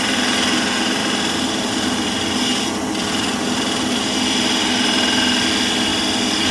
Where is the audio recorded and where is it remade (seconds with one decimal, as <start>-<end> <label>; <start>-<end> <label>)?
0.0-1.0 recorded; 1.0-4.0 remade; 4.0-6.5 recorded